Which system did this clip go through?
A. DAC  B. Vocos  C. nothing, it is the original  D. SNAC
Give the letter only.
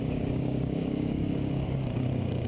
A